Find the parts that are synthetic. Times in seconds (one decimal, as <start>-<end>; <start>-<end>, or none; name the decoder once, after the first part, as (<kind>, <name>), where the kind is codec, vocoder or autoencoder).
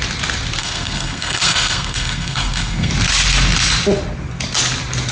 0.6-2.9 (codec, SNAC)